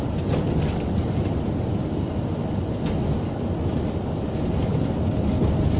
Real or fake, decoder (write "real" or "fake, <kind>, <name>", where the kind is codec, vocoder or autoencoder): real